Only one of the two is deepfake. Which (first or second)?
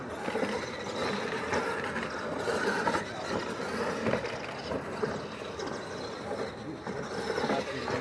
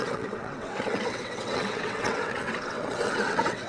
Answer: second